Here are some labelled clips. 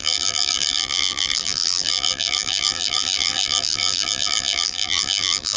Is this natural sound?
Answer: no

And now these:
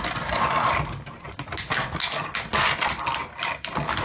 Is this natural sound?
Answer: yes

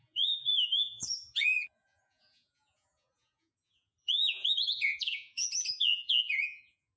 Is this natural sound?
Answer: no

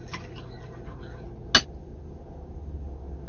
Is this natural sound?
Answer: yes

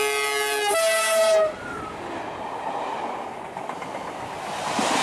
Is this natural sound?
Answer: yes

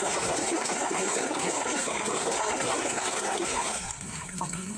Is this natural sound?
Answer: no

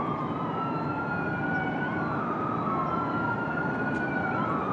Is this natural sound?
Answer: yes